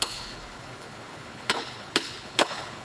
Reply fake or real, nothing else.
fake